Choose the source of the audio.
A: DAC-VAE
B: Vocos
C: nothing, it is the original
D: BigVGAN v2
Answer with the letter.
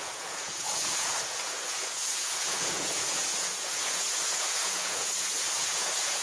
B